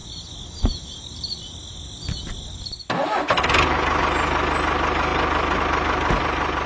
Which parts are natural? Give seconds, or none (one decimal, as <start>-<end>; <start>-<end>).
0.0-6.7

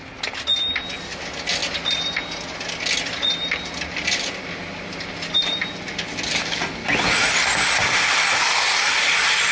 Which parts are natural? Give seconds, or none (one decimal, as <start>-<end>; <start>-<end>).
0.0-9.5

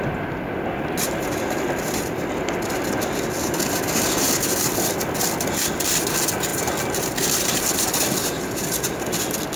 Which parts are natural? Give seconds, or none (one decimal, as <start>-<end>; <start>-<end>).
0.0-9.6

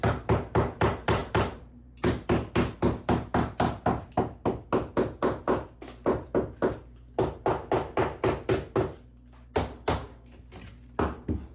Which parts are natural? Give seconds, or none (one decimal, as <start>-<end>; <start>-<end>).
0.0-1.2; 2.1-11.5

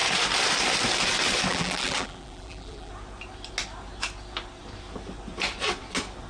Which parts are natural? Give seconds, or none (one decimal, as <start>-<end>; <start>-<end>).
0.0-1.5; 2.9-6.3

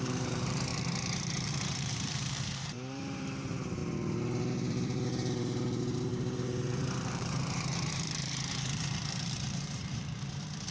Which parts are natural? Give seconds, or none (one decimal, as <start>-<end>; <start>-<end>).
3.8-4.4

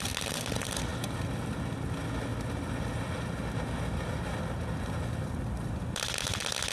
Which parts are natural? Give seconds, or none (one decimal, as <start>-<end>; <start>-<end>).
0.0-0.9; 1.6-2.3; 6.3-6.7